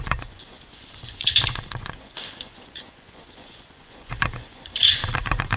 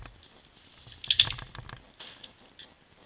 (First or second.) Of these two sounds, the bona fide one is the second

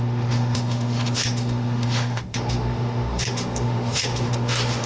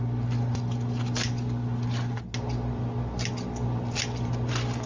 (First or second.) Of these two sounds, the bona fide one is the second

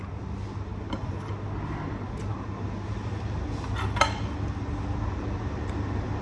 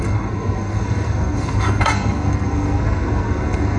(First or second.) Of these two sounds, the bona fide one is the first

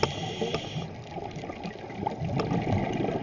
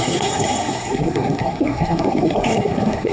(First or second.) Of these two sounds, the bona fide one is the first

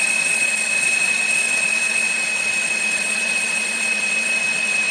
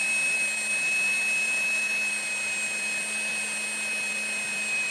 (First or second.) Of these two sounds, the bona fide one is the second